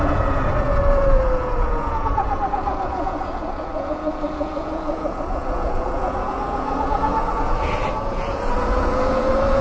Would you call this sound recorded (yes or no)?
no